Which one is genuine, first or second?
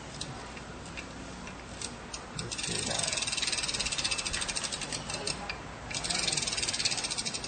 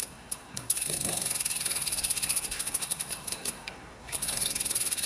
first